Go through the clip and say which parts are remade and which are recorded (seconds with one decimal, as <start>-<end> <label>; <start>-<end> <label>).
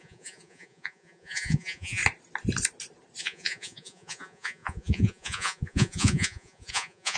0.0-2.0 remade; 2.0-3.2 recorded; 3.2-7.2 remade